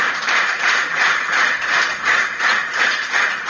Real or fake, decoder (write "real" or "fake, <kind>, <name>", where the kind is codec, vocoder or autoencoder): fake, vocoder, Vocos